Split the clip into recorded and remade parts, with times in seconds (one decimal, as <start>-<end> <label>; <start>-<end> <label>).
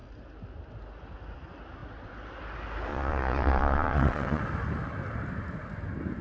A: 0.0-2.9 recorded; 2.9-4.4 remade; 4.4-6.2 recorded